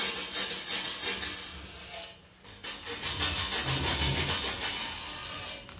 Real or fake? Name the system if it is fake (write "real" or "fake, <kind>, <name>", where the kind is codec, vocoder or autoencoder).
real